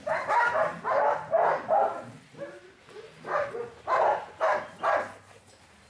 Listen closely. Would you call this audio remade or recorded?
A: recorded